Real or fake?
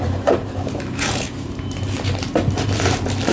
fake